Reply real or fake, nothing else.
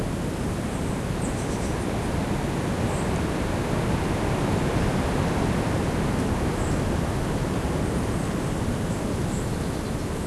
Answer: real